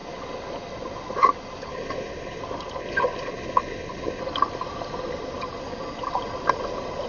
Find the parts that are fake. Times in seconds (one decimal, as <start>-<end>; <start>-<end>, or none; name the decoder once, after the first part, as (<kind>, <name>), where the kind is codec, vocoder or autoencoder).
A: 1.7-2.4 (codec, HILCodec); 2.8-4.2